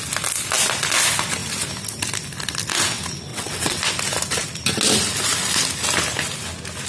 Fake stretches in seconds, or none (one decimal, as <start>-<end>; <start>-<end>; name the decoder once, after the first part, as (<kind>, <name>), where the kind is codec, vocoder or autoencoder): 3.3-3.8 (vocoder, WaveNeXt)

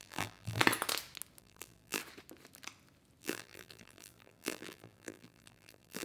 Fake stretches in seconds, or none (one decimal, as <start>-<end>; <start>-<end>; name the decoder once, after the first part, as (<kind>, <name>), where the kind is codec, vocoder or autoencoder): 0.0-0.6 (vocoder, BigVGAN v2); 1.4-2.0; 3.2-6.0

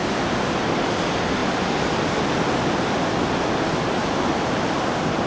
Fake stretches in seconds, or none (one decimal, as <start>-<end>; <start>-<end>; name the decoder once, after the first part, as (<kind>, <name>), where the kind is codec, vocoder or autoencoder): none

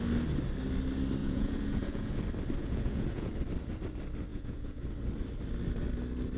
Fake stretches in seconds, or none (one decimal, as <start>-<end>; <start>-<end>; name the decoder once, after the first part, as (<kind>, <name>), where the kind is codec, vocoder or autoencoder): 1.2-2.2 (vocoder, Vocos); 2.6-3.3; 4.3-4.9

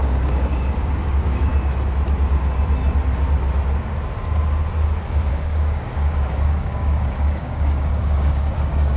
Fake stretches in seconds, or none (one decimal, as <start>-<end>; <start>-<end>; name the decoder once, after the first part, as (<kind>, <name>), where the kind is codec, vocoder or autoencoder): 0.0-1.5 (codec, DAC); 5.3-9.0

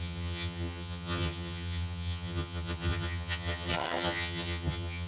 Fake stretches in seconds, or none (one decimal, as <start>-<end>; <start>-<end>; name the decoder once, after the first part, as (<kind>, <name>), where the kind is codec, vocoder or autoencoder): 0.0-5.1 (vocoder, HiFi-GAN)

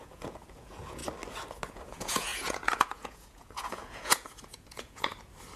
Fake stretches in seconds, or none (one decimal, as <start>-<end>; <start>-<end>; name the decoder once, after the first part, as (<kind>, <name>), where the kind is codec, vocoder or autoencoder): 0.0-1.0 (vocoder, Vocos); 1.7-5.1

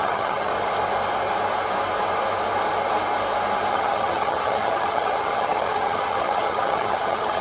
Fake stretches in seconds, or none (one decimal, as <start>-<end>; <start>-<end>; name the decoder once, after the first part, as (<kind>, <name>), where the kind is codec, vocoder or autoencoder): 0.0-0.5 (vocoder, HiFi-GAN); 3.7-7.4